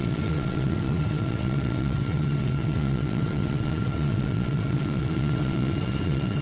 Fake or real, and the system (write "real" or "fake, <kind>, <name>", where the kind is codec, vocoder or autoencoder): fake, vocoder, WaveNeXt